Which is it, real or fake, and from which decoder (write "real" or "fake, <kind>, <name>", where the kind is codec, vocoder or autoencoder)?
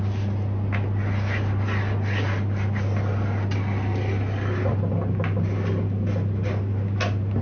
real